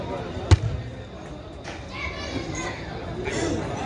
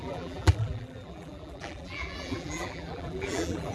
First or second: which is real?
first